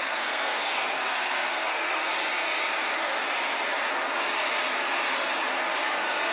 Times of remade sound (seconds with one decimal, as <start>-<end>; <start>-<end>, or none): 0.0-2.0; 5.8-6.3